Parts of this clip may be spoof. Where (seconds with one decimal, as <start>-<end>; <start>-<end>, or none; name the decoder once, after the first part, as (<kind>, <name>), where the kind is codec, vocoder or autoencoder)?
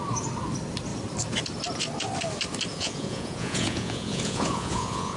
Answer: 2.7-5.2 (vocoder, Vocos)